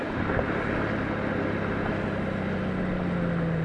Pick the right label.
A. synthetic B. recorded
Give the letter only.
B